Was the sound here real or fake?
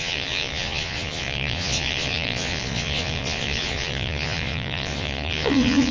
fake